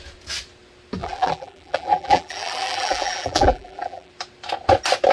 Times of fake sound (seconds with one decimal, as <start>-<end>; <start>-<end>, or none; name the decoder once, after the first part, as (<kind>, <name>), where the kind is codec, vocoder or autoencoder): 1.0-4.1 (vocoder, BigVGAN v2)